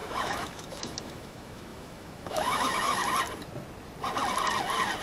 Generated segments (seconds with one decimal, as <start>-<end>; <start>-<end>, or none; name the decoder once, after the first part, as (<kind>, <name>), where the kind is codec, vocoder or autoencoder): 0.0-3.0 (autoencoder, DAC-VAE)